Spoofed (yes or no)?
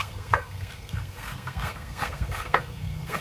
yes